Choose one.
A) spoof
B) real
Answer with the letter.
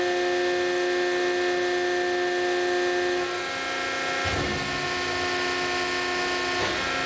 B